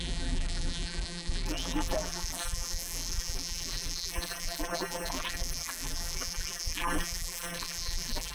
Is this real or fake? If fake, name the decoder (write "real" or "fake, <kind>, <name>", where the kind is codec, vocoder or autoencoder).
fake, vocoder, BigVGAN v2